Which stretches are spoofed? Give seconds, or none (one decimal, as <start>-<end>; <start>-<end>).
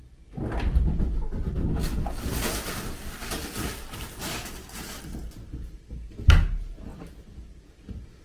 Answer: 6.9-7.7